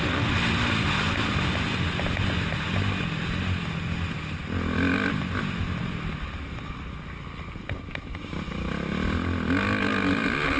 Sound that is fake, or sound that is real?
real